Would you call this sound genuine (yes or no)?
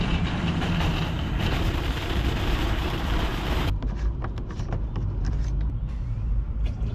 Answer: no